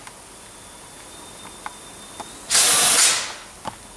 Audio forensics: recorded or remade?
recorded